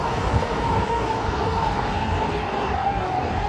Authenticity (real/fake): fake